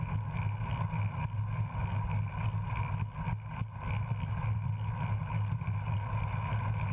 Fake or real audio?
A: real